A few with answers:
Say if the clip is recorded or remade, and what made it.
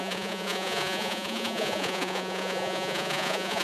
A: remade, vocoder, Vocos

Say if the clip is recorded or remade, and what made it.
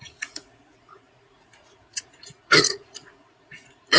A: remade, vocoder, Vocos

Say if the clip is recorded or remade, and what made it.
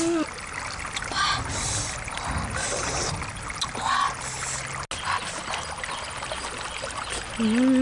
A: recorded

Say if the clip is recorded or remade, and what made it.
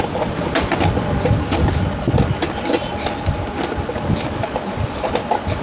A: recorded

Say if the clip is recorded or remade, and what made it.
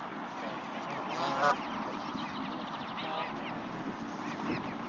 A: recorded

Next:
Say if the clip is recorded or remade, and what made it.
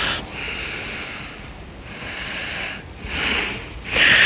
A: recorded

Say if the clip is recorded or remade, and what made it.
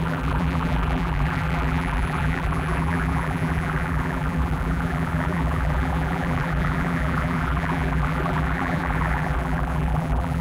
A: remade, vocoder, BigVGAN v2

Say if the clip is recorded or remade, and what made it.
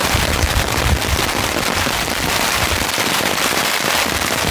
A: remade, vocoder, BigVGAN v2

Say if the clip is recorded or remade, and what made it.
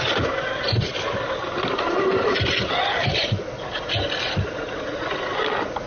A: recorded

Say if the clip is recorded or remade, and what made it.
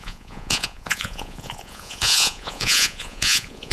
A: remade, vocoder, Vocos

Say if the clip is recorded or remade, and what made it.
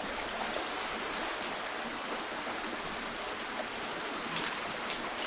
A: recorded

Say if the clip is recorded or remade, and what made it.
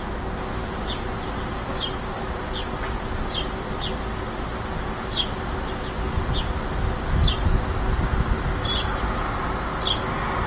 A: recorded